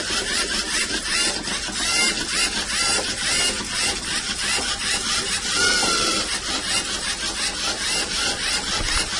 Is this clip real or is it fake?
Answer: fake